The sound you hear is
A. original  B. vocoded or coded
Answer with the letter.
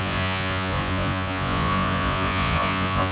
B